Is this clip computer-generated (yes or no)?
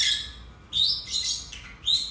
no